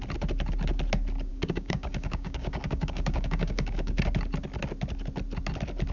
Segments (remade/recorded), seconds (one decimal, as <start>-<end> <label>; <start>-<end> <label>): 0.0-1.3 recorded; 1.3-4.0 remade; 4.0-5.9 recorded